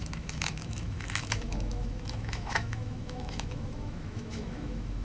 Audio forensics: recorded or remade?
remade